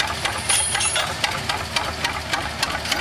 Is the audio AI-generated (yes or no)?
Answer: no